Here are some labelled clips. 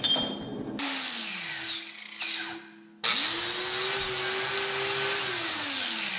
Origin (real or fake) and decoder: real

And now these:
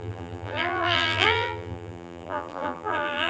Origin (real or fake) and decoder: fake, vocoder, BigVGAN v2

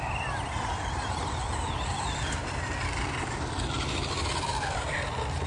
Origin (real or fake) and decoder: fake, vocoder, BigVGAN v2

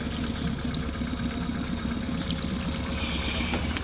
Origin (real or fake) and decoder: real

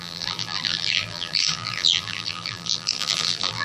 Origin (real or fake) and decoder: fake, vocoder, BigVGAN v2